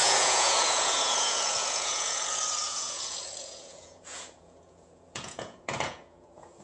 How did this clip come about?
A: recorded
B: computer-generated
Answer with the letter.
B